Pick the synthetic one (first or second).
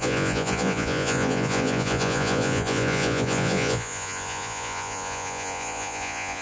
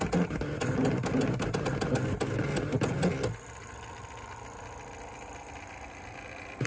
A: first